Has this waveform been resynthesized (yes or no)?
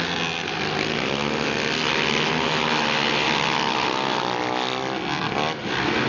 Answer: no